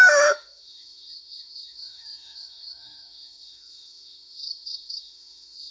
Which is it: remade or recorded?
remade